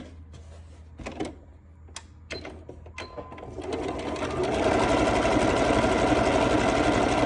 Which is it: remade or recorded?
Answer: recorded